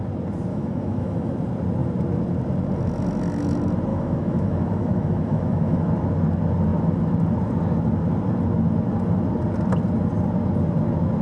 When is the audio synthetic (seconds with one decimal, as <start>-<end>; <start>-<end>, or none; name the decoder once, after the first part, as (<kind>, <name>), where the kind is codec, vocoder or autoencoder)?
0.5-1.3 (autoencoder, DAC-VAE); 3.9-5.9